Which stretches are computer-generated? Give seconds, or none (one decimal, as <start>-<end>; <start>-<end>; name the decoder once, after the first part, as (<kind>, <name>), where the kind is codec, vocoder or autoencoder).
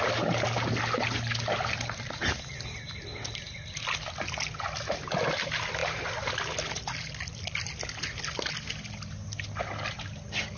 none